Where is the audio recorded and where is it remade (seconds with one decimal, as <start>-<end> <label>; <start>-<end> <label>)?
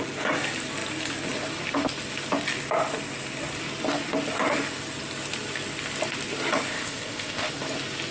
0.0-6.7 recorded; 6.7-7.5 remade; 7.5-8.1 recorded